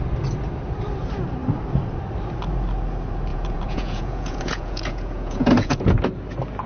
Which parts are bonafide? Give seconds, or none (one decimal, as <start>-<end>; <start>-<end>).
0.0-3.3; 6.0-6.7